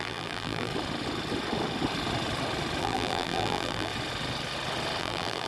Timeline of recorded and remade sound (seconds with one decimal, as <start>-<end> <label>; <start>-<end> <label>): 0.0-0.7 remade; 0.7-2.8 recorded; 2.8-3.9 remade; 3.9-5.0 recorded; 5.0-5.5 remade